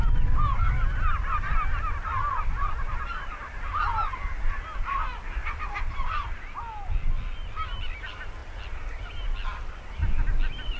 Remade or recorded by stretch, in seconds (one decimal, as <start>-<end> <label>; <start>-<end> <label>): 0.0-10.8 recorded